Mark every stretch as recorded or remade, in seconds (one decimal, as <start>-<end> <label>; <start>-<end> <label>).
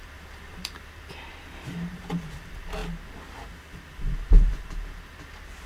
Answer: 0.0-2.3 remade; 2.3-5.7 recorded